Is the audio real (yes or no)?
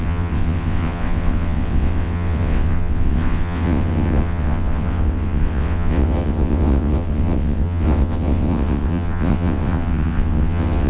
no